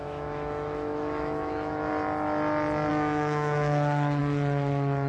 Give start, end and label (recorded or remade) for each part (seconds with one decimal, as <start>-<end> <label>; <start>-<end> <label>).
0.0-1.9 remade; 1.9-2.9 recorded; 2.9-4.2 remade; 4.2-5.1 recorded